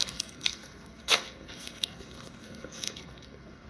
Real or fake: fake